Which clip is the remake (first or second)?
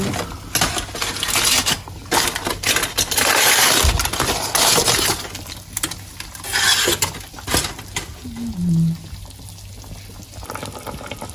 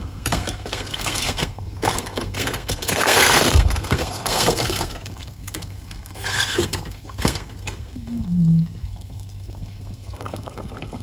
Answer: second